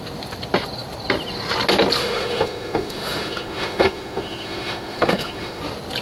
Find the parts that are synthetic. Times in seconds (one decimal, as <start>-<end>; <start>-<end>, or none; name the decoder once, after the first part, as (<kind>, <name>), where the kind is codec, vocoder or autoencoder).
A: 2.0-5.6 (autoencoder, DAC-VAE)